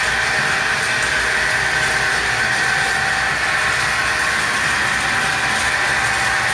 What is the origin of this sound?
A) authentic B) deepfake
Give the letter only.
A